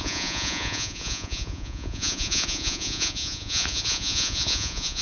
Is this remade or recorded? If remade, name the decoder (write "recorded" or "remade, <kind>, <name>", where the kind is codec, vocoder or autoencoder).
remade, vocoder, Vocos